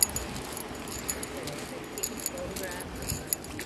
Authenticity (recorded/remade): recorded